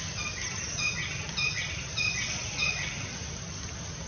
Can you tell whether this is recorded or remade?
recorded